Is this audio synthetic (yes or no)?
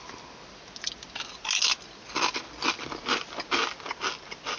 no